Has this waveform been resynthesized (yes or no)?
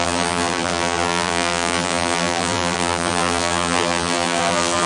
yes